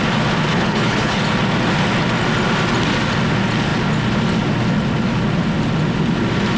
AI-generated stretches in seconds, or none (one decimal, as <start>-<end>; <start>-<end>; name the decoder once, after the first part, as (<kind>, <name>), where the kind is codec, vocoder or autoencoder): 0.5-1.2 (codec, HILCodec)